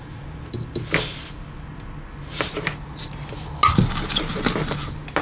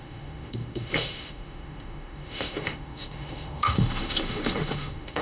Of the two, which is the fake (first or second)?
second